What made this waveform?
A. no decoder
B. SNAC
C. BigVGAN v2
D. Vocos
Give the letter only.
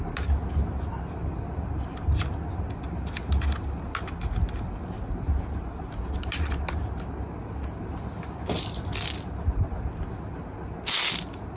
A